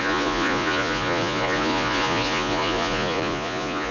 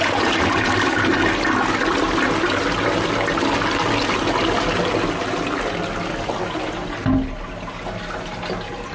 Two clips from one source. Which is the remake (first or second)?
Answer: first